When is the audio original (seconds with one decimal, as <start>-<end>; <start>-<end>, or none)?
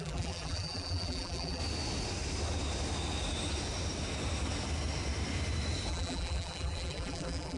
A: 1.6-5.9